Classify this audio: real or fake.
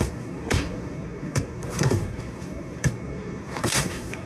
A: fake